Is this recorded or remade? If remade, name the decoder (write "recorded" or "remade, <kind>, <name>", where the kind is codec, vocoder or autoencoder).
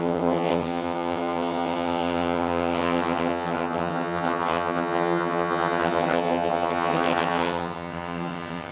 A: remade, vocoder, HiFi-GAN